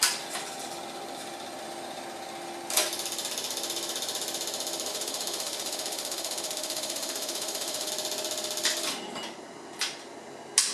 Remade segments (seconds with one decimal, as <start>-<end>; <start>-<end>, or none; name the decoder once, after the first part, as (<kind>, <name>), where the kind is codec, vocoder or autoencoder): 4.9-7.9 (autoencoder, DAC-VAE)